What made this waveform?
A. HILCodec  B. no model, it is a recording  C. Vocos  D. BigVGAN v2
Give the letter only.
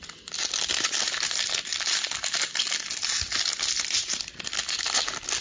B